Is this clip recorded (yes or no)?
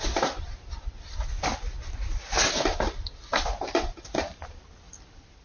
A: yes